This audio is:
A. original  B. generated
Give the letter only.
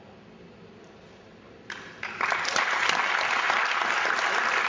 A